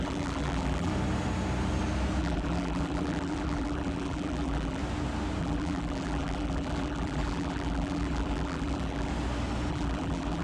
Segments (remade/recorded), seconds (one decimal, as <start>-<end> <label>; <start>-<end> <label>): 0.0-0.9 remade; 0.9-2.2 recorded; 2.2-4.8 remade; 4.8-5.4 recorded; 5.4-9.1 remade; 9.1-9.7 recorded; 9.7-10.4 remade

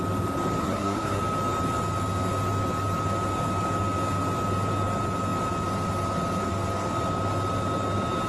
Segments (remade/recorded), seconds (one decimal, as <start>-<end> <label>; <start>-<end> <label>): 0.0-0.6 recorded; 0.6-1.2 remade; 1.2-8.3 recorded

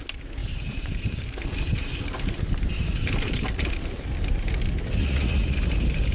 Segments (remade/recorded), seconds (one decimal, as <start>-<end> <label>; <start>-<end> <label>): 0.0-5.0 recorded; 5.0-5.6 remade; 5.6-6.1 recorded

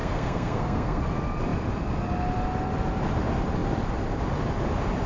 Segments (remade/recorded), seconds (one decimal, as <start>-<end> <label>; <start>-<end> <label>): 0.0-1.0 remade; 1.0-5.1 recorded

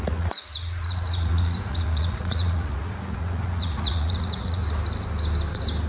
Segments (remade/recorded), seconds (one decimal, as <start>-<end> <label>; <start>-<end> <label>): 0.0-4.6 remade; 4.6-5.9 recorded

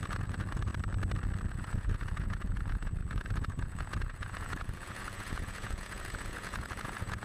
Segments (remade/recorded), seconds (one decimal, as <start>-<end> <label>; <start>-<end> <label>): 0.0-0.7 remade; 0.7-1.5 recorded; 1.5-7.2 remade